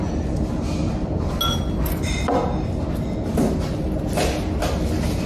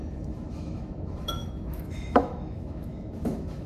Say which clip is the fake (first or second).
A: second